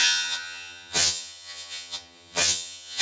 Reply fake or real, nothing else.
fake